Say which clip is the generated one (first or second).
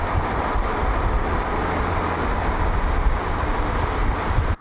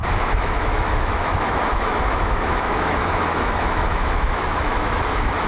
second